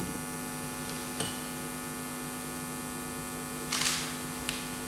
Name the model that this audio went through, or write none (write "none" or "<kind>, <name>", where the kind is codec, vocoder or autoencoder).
none